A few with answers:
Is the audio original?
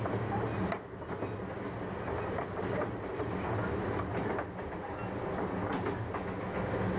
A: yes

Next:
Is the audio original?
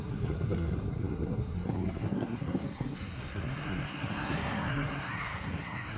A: no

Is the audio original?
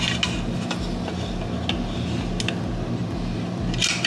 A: yes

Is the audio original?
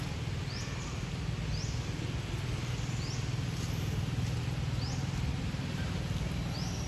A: yes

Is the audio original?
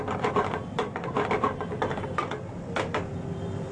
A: yes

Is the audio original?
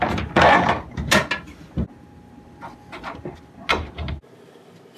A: yes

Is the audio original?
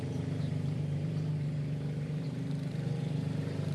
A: no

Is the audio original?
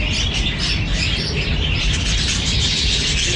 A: yes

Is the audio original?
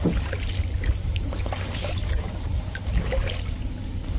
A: yes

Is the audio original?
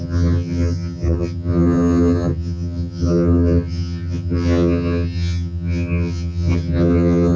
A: no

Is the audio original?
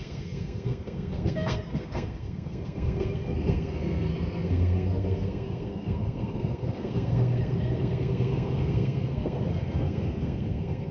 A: no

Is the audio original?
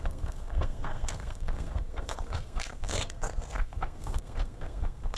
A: no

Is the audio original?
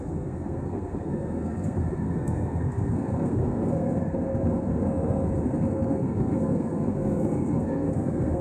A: no